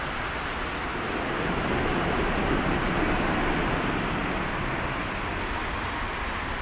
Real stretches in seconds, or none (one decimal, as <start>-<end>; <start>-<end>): 0.0-0.9; 3.4-6.6